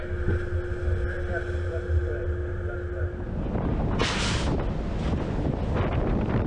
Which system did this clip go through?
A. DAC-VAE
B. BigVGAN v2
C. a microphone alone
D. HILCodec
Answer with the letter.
C